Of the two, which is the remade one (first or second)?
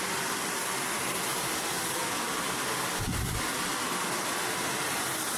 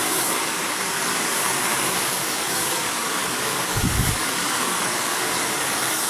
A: second